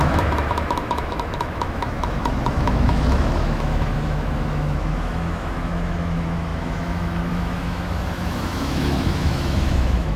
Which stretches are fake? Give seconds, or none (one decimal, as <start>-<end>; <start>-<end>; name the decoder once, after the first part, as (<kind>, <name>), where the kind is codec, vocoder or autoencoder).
0.0-10.2 (autoencoder, DAC-VAE)